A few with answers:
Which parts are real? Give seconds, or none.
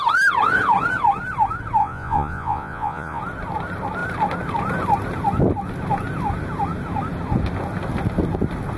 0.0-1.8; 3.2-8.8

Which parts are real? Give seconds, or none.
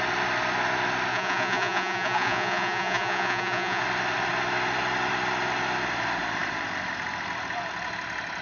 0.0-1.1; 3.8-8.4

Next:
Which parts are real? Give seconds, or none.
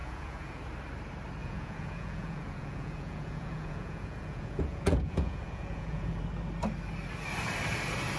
0.6-1.4; 6.2-8.2